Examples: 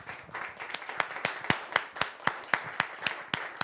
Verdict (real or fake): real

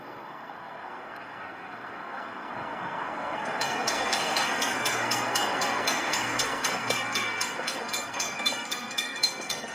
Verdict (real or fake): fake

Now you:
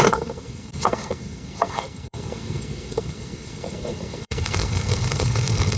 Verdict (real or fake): fake